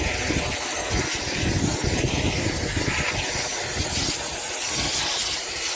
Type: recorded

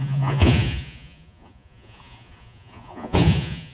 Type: remade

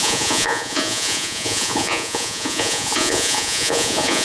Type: remade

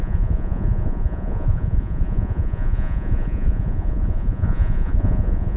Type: remade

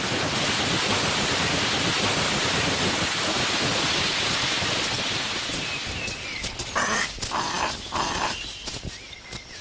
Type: recorded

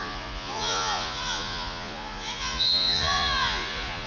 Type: remade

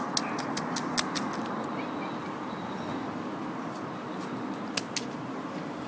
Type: recorded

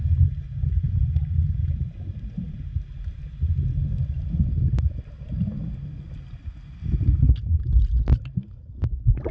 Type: recorded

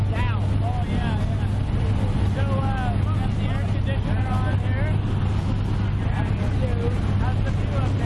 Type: recorded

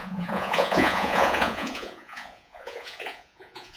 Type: remade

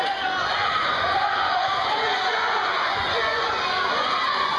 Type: remade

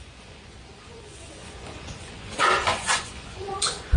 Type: remade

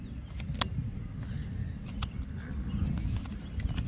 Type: recorded